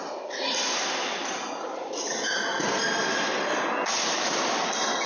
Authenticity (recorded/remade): recorded